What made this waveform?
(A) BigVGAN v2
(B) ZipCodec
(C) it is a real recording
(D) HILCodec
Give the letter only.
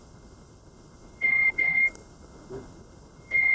D